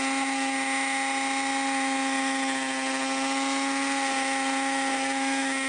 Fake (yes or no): no